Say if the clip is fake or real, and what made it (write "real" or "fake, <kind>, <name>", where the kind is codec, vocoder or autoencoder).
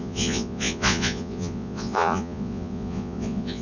fake, vocoder, Vocos